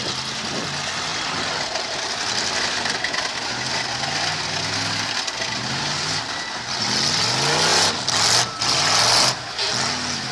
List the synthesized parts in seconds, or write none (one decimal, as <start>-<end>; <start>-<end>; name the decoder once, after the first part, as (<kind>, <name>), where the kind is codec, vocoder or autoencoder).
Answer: none